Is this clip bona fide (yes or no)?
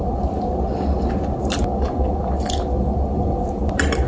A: yes